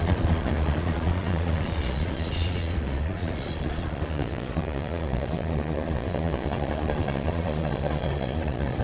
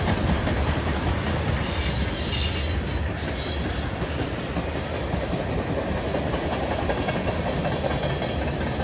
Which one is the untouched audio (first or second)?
second